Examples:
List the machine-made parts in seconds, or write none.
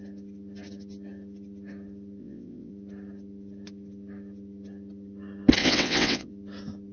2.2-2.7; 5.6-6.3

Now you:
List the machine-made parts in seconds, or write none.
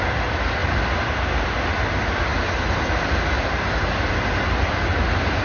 none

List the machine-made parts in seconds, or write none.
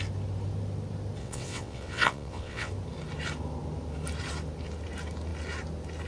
1.2-2.7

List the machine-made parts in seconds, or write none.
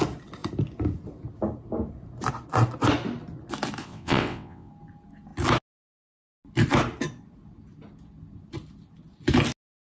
3.8-4.7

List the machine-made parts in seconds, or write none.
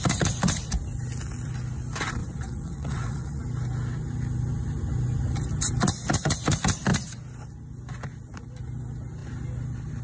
2.2-3.4